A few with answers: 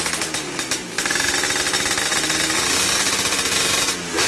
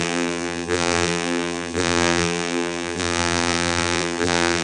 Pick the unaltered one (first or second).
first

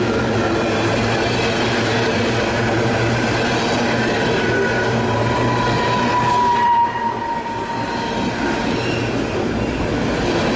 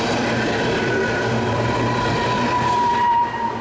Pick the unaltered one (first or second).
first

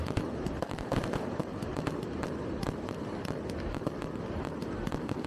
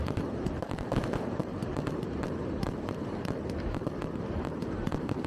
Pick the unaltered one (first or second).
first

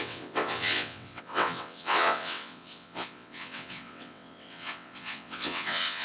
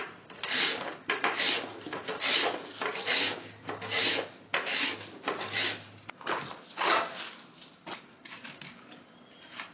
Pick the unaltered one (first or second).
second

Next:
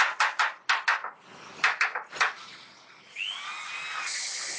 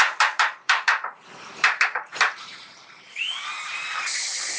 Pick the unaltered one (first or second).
first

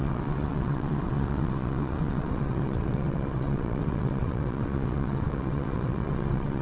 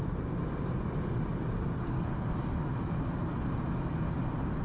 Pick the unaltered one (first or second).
second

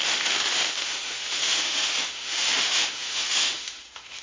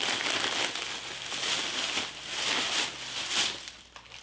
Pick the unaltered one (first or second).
second